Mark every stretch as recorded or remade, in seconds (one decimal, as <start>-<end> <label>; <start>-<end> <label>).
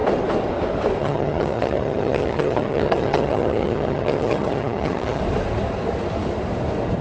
0.0-1.0 recorded; 1.0-5.2 remade; 5.2-7.0 recorded